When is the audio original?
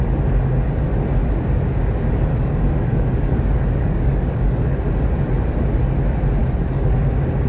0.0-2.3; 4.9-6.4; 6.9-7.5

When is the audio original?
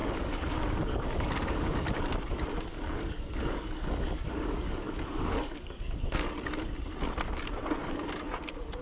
1.9-2.7; 6.3-8.8